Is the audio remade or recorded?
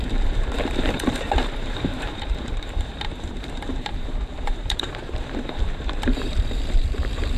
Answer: remade